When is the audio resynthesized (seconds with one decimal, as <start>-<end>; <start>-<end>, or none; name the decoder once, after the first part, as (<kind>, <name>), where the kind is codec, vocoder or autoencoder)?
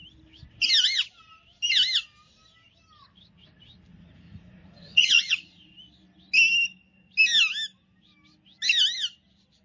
3.9-5.7 (vocoder, Vocos)